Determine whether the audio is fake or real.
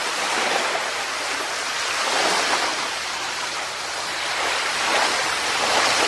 real